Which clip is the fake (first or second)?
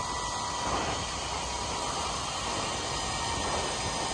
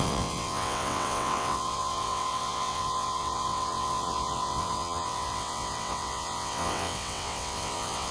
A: second